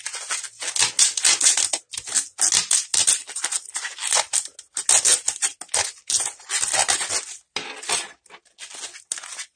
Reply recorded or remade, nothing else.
recorded